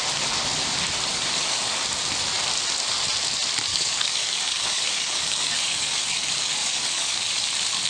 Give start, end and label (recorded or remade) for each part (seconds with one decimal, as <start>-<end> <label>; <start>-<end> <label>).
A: 0.0-1.1 recorded; 1.1-1.8 remade; 1.8-3.7 recorded; 3.7-7.4 remade; 7.4-7.9 recorded